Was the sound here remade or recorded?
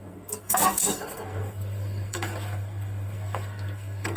remade